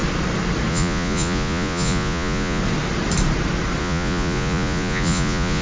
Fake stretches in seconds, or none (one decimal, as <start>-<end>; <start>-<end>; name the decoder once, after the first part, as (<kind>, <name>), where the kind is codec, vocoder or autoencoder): 0.7-2.6 (vocoder, Vocos); 3.8-5.6